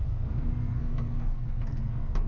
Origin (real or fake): fake